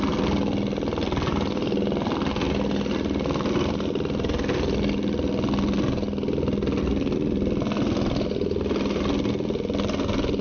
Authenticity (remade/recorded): recorded